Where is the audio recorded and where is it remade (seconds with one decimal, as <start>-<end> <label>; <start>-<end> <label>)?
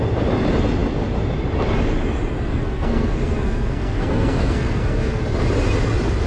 0.0-2.5 recorded; 2.5-5.2 remade; 5.2-6.3 recorded